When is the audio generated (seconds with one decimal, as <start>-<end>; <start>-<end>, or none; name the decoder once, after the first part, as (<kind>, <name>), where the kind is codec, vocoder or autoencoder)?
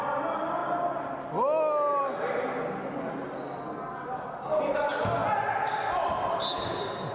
none